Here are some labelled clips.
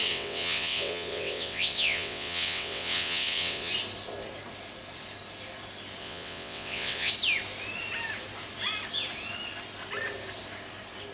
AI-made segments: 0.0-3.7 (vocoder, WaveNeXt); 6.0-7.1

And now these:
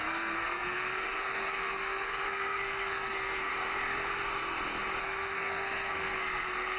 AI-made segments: 0.0-3.5 (codec, SNAC); 5.0-6.8

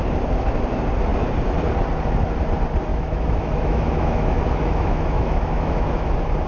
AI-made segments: 2.9-6.1 (autoencoder, DAC-VAE)